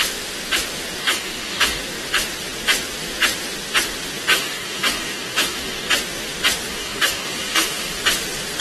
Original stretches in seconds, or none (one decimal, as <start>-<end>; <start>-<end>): 0.0-1.0; 1.8-4.3; 5.9-6.7; 8.0-8.6

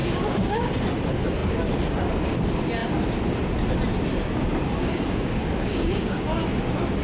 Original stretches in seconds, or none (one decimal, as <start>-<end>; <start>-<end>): 0.7-4.7; 6.4-7.0

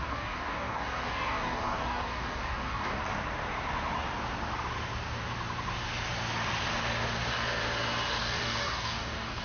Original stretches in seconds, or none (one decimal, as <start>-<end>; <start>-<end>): 3.0-8.2

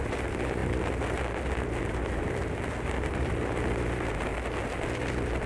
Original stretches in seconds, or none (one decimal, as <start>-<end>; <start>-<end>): 0.0-5.5